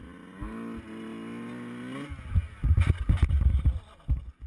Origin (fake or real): real